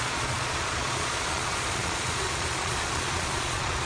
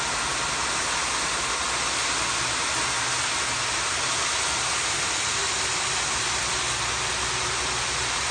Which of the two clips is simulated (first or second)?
first